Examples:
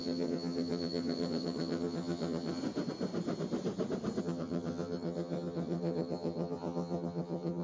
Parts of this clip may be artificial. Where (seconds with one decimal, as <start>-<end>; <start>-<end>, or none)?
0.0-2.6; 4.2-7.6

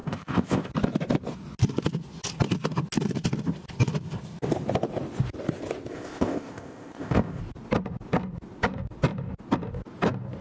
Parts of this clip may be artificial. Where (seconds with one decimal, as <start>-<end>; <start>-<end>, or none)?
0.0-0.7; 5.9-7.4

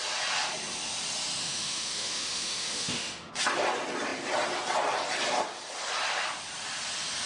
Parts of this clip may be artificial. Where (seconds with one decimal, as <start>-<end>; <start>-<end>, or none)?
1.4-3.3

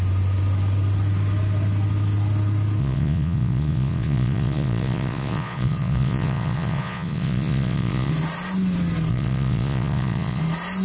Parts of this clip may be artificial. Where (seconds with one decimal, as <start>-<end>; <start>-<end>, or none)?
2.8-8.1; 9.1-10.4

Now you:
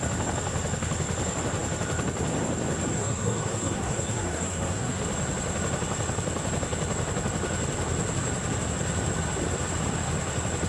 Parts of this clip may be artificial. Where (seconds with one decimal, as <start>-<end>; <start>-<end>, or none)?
2.9-5.0

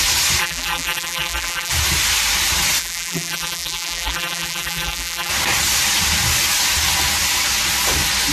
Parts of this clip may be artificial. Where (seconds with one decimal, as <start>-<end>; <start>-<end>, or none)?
0.4-1.7; 2.8-5.3

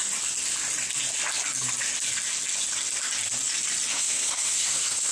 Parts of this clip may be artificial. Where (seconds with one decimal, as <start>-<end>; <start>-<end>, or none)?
3.9-5.1